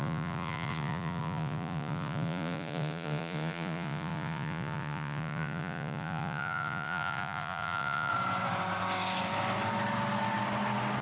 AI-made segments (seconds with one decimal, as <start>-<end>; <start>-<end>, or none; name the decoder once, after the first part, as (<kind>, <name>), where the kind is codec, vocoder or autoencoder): 0.0-8.1 (vocoder, Vocos)